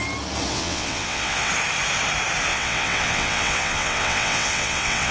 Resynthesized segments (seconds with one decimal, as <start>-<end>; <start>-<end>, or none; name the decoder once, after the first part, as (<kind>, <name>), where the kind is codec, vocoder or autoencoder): 0.5-1.5 (vocoder, WaveNeXt); 2.5-5.1